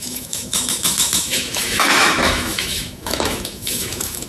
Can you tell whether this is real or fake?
fake